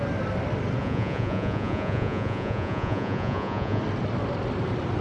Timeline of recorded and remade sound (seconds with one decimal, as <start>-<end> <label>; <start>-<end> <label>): 0.0-0.8 recorded; 0.8-3.8 remade; 3.8-5.0 recorded